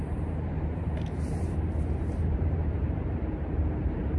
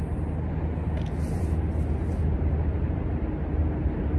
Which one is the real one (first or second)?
second